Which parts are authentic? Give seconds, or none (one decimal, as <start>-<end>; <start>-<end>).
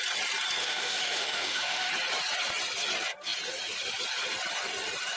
0.0-0.6; 1.9-5.2